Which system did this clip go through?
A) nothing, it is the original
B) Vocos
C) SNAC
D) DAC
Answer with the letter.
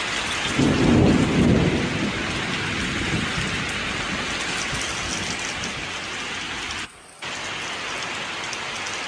A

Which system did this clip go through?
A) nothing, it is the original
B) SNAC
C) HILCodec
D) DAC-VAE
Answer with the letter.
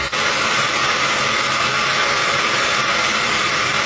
A